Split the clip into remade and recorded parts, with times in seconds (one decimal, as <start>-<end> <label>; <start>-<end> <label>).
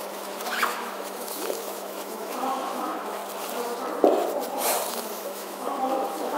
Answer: 0.0-3.2 remade; 3.2-4.9 recorded; 4.9-6.4 remade